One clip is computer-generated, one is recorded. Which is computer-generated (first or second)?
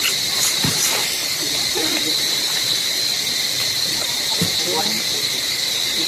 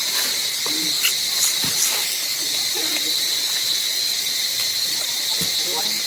first